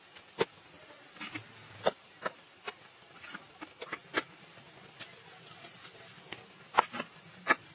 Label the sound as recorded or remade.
recorded